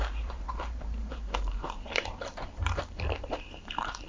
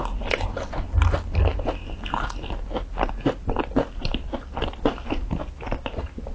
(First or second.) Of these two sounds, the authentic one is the second